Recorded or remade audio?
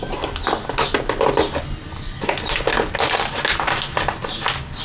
recorded